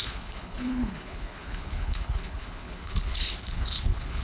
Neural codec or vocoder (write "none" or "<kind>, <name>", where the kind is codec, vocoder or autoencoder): codec, HILCodec